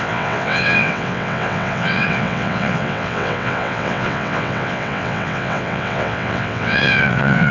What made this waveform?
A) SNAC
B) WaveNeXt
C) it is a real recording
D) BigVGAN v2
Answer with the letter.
B